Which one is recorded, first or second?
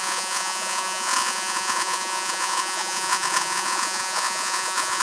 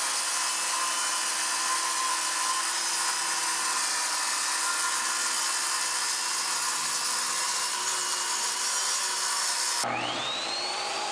second